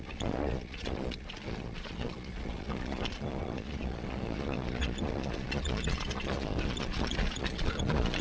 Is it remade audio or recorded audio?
remade